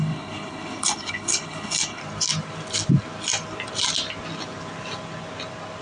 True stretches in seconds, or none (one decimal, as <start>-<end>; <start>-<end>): 2.0-5.8